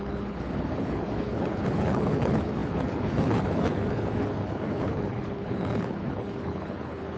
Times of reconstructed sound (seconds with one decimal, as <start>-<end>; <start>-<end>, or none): 0.0-7.2